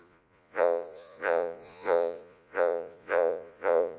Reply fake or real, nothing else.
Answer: fake